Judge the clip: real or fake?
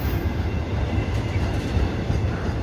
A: real